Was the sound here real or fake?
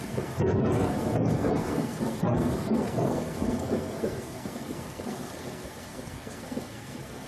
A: fake